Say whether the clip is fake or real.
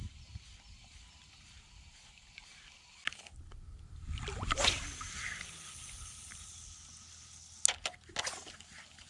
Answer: real